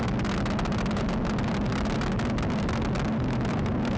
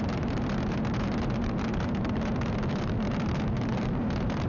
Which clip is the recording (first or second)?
first